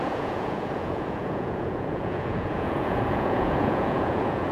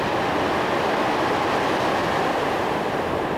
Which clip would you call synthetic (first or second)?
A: first